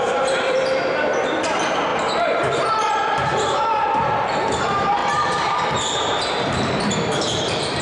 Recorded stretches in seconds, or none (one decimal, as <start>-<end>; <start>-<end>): none